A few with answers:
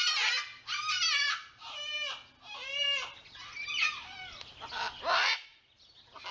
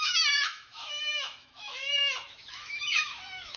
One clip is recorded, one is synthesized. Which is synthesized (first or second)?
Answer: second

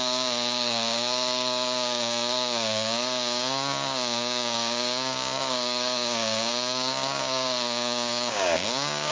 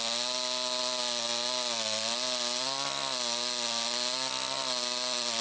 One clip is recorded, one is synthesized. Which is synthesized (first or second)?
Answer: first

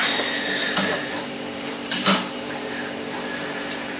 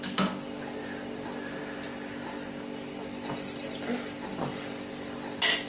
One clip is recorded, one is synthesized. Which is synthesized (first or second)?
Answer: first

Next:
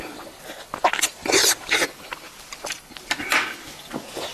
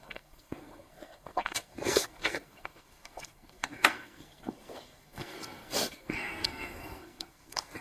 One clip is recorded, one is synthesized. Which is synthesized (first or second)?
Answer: second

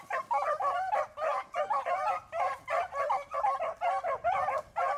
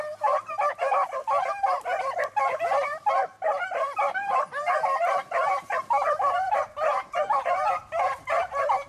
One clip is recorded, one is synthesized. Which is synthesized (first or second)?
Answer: second